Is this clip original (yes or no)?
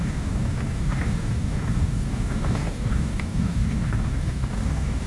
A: no